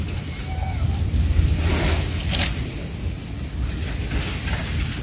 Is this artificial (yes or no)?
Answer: no